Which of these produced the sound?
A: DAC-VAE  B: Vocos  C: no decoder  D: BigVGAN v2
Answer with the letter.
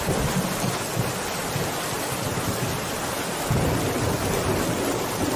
C